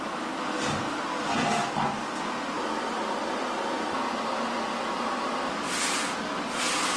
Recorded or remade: recorded